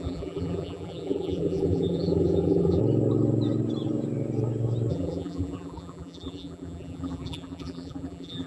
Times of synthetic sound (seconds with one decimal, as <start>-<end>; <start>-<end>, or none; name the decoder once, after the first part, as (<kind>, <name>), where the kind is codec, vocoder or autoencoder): 0.0-2.8 (vocoder, BigVGAN v2); 4.9-8.5